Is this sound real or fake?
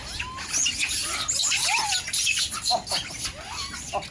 real